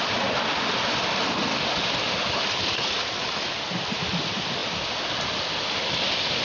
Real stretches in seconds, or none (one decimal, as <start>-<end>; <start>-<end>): 0.0-6.4